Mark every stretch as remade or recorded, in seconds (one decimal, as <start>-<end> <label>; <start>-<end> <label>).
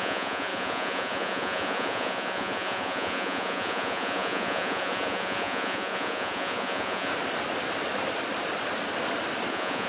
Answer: 0.0-7.1 remade; 7.1-9.5 recorded; 9.5-9.9 remade